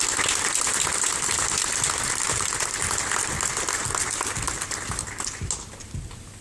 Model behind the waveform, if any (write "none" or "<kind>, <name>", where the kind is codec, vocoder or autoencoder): none